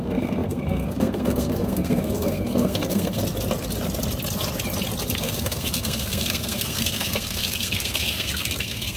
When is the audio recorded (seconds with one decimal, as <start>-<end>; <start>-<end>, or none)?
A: 3.2-5.2